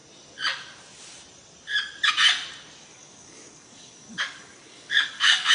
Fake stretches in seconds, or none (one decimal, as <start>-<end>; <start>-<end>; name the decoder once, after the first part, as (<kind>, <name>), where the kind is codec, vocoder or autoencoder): 2.9-5.5 (codec, DAC)